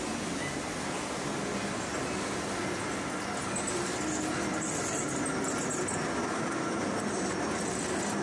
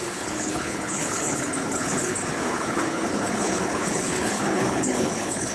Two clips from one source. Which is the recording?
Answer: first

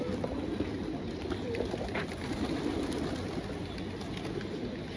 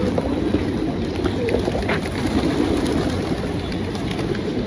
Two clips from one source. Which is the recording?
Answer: first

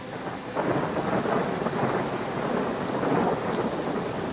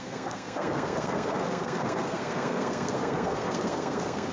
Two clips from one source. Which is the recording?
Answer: first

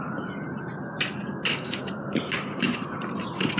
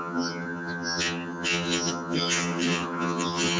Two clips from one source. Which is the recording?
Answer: first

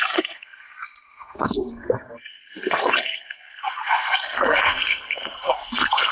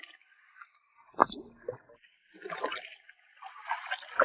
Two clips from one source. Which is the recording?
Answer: second